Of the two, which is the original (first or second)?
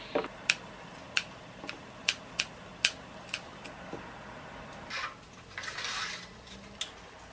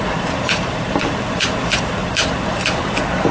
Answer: first